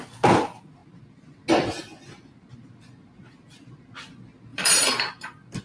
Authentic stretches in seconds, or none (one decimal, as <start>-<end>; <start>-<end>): 0.0-4.5; 5.0-5.6